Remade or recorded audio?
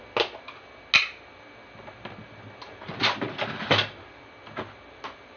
recorded